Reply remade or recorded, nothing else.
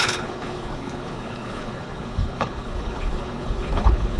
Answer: remade